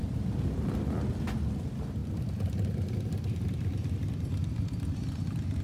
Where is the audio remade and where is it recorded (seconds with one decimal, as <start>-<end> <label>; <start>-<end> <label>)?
0.0-5.6 recorded